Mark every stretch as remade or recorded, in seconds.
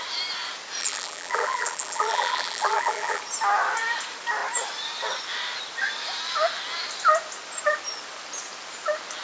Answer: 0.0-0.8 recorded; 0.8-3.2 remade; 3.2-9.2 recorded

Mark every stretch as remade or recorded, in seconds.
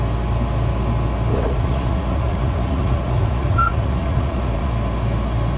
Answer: 0.0-1.3 recorded; 1.3-4.7 remade; 4.7-5.6 recorded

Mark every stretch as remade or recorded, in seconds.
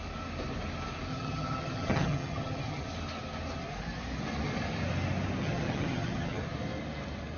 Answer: 0.0-1.1 recorded; 1.1-2.8 remade; 2.8-5.4 recorded; 5.4-6.4 remade; 6.4-7.4 recorded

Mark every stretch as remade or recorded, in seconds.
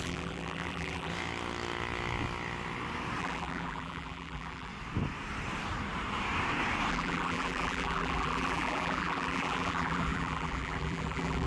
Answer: 0.0-1.1 remade; 1.1-3.2 recorded; 3.2-4.7 remade; 4.7-6.9 recorded; 6.9-11.5 remade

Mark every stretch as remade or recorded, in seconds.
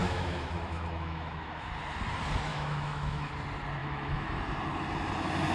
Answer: 0.0-1.7 remade; 1.7-2.5 recorded; 2.5-3.3 remade; 3.3-3.8 recorded; 3.8-4.4 remade; 4.4-5.5 recorded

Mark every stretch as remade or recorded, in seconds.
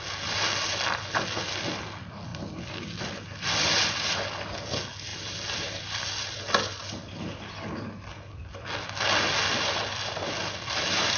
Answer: 0.0-11.2 recorded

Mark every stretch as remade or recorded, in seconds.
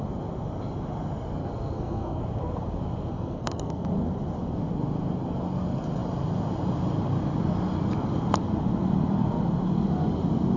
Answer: 0.0-1.4 recorded; 1.4-2.2 remade; 2.2-3.1 recorded; 3.1-3.9 remade; 3.9-10.6 recorded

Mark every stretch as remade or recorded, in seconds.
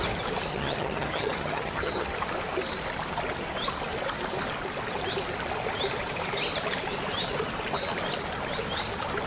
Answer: 0.0-0.5 recorded; 0.5-2.1 remade; 2.1-9.3 recorded